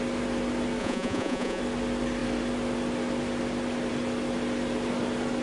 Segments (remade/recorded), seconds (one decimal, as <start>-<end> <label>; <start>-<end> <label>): 0.0-0.8 recorded; 0.8-1.6 remade; 1.6-5.4 recorded